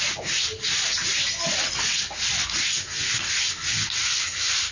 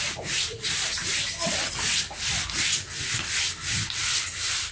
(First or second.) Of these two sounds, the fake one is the second